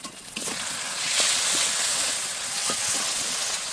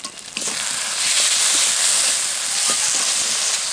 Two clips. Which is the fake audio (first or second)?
first